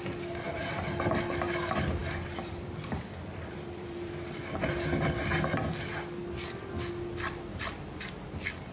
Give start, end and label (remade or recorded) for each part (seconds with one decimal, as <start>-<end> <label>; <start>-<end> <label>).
0.0-2.0 recorded; 2.0-4.4 remade; 4.4-8.7 recorded